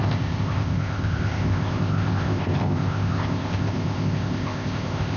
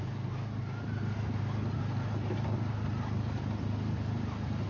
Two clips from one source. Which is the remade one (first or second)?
first